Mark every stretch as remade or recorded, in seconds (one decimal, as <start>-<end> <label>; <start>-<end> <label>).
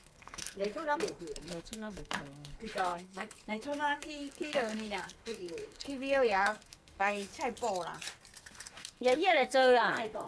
0.0-7.3 remade; 7.3-8.4 recorded; 8.4-10.3 remade